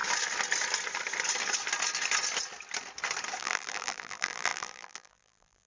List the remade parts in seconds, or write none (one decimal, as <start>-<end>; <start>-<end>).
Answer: 3.4-5.7